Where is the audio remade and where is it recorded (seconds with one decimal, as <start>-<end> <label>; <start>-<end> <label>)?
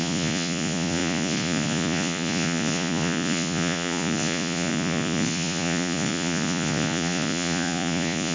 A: 0.0-8.3 remade